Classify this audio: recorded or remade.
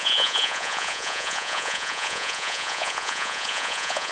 remade